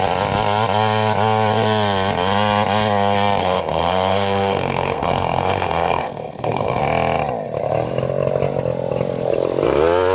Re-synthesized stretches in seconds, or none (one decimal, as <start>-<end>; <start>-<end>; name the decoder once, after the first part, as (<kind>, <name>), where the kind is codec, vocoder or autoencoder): 3.4-6.8 (codec, SNAC)